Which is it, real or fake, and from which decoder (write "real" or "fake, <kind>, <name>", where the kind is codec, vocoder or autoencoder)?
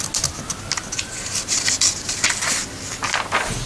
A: real